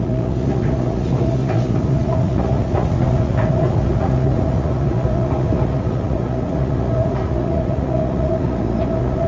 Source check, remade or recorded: remade